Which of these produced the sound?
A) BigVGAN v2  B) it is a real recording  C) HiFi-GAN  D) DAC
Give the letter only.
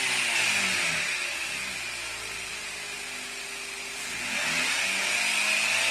B